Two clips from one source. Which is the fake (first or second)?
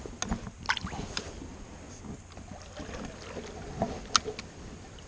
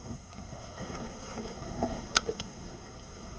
second